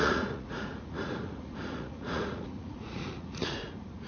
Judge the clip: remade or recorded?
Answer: remade